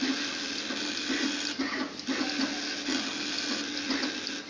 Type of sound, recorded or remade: recorded